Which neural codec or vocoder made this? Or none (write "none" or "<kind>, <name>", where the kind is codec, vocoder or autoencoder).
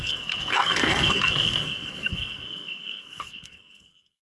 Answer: codec, SNAC